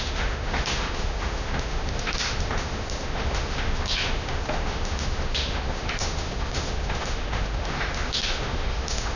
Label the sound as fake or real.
fake